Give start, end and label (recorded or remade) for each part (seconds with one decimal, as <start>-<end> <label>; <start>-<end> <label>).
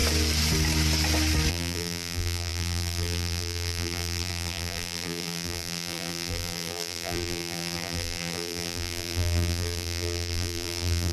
0.0-1.5 recorded; 1.5-11.1 remade